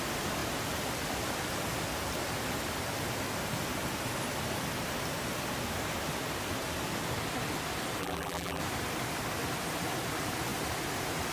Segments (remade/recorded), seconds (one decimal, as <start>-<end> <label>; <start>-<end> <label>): 0.0-8.0 recorded; 8.0-8.6 remade; 8.6-11.3 recorded